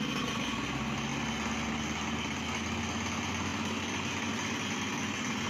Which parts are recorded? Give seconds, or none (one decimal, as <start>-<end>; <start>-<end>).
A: 0.0-5.5

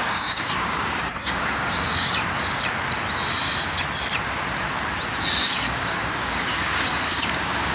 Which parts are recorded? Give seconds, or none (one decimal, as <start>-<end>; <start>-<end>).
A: 2.2-5.4